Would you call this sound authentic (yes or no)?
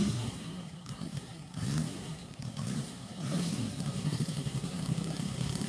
no